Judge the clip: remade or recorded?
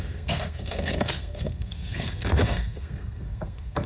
remade